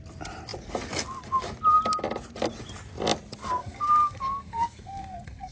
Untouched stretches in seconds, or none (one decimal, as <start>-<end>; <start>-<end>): 0.0-3.6

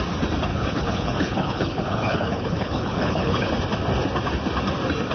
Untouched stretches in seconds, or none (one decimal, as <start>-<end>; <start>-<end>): 0.0-0.5; 3.5-5.1